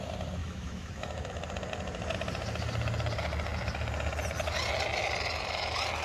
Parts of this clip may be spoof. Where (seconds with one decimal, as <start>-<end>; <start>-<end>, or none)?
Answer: 0.4-1.3